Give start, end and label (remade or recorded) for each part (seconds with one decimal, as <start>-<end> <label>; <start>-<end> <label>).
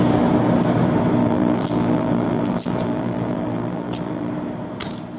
0.0-1.2 recorded; 1.2-4.3 remade; 4.3-5.2 recorded